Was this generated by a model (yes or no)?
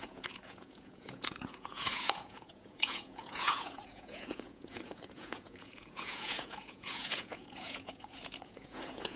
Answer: yes